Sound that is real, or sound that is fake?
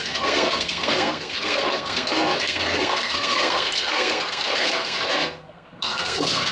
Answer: fake